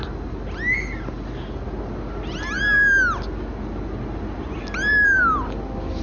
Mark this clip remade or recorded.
recorded